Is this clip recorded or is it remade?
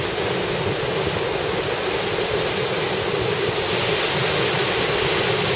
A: recorded